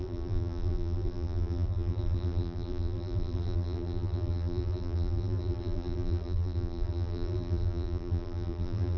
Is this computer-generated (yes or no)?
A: yes